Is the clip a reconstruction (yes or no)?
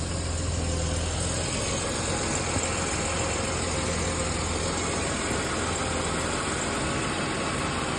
no